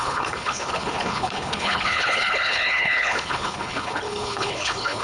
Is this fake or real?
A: fake